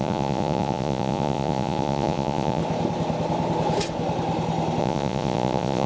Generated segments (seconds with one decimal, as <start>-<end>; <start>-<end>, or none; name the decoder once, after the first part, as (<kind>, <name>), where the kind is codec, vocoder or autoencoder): 0.0-2.6 (vocoder, Vocos); 4.8-5.9